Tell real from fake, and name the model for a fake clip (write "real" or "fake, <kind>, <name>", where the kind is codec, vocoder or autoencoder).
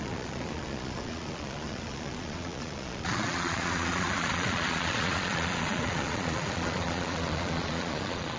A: fake, vocoder, Vocos